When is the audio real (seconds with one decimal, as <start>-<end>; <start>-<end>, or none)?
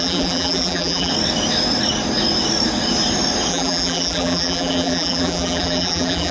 1.1-3.5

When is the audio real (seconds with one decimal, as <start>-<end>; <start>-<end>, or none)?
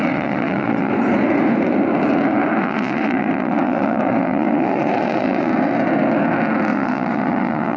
0.9-2.6; 5.5-6.7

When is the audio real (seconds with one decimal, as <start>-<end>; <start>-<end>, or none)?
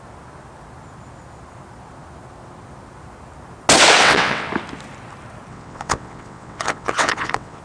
0.0-4.0; 4.5-5.5